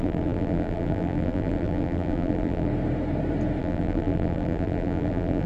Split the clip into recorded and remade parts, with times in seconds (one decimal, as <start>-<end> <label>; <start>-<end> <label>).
0.0-2.7 remade; 2.7-3.6 recorded; 3.6-5.5 remade